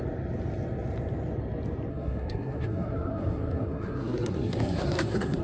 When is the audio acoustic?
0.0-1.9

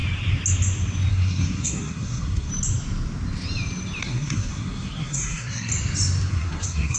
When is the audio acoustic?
0.0-1.1; 2.5-4.0; 5.7-6.3

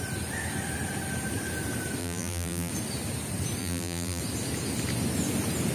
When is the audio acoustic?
0.0-2.0; 2.7-3.6; 4.2-5.7

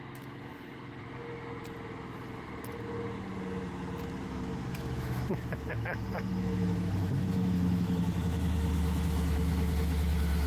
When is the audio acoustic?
0.5-4.2

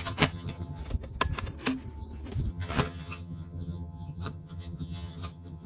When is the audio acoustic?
0.8-2.5